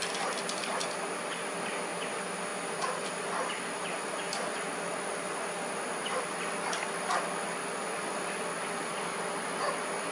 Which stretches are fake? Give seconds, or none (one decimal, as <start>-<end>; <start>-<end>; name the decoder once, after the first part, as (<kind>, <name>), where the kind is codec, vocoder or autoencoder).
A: none